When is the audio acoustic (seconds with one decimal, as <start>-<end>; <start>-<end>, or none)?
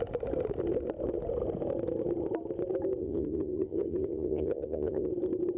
0.0-3.0; 5.1-5.6